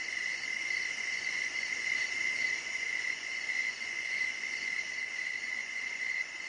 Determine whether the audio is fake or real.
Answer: fake